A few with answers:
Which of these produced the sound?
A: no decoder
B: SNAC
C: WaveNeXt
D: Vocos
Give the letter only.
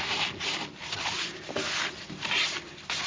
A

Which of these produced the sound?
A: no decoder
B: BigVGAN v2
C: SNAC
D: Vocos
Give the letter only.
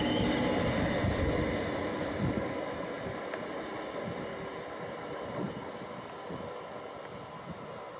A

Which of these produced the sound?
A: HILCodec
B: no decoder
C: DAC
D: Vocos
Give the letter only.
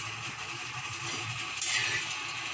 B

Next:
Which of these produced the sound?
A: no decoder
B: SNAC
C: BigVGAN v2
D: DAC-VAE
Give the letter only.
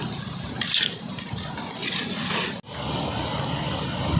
A